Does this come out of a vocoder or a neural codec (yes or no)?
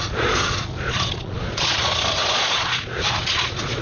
yes